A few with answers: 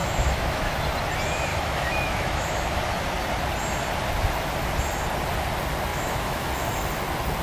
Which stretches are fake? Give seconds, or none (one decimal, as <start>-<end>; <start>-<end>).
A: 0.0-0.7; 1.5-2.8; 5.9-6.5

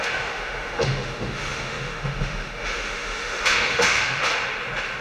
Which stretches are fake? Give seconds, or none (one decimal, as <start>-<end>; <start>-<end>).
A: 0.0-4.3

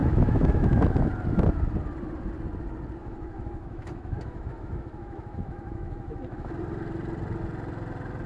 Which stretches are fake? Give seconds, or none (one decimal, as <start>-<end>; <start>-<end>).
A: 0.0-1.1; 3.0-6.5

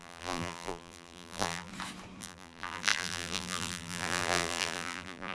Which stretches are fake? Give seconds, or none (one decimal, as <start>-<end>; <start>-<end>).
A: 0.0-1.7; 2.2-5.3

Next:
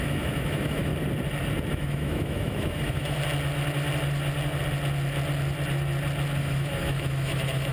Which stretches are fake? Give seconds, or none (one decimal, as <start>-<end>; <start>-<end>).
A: 0.0-0.9; 1.7-3.2; 6.4-7.7

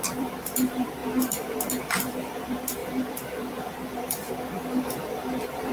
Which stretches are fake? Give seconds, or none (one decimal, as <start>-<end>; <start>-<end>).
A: 0.0-5.7

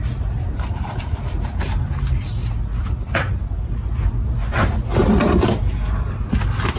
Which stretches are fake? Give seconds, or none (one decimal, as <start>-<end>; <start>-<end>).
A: 0.0-1.9

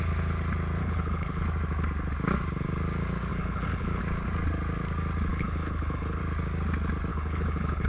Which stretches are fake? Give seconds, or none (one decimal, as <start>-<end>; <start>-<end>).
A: 0.8-1.4; 3.3-4.0; 5.3-6.2; 7.1-7.9